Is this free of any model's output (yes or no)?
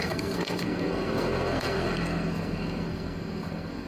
no